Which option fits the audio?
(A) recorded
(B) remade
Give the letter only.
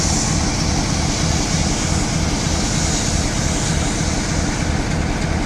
A